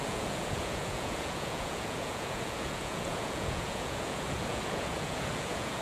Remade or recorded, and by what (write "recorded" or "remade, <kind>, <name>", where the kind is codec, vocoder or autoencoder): remade, vocoder, Vocos